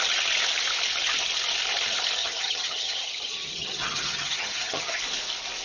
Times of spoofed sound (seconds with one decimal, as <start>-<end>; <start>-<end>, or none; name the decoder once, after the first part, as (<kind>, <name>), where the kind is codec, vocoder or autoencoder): 2.2-5.0 (vocoder, HiFi-GAN)